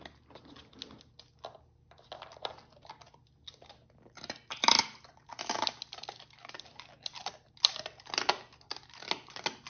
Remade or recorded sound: recorded